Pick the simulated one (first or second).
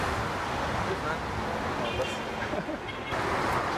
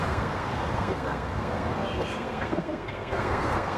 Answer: second